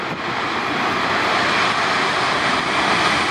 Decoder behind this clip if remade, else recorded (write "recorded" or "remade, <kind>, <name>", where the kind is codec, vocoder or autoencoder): recorded